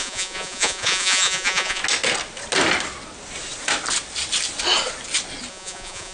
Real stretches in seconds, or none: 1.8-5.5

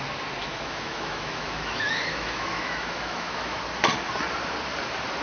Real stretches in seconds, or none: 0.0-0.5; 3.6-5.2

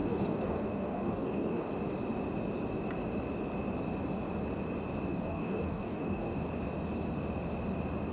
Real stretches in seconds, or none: 1.7-5.1; 6.3-8.1